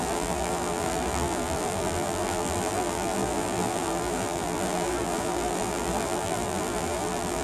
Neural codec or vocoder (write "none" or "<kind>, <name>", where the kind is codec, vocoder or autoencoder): vocoder, BigVGAN v2